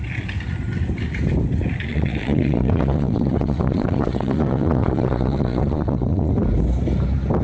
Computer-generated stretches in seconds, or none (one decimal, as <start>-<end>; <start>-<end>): 1.9-6.3